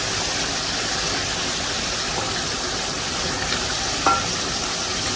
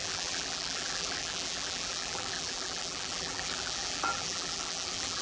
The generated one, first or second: second